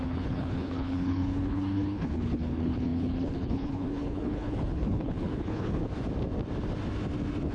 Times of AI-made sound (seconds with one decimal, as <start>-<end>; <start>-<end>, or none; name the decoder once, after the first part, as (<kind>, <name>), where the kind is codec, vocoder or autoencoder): 0.0-5.8 (codec, HILCodec)